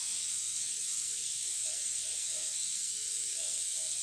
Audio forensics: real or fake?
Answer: fake